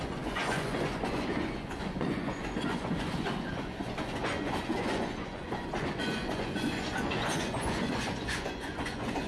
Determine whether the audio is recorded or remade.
remade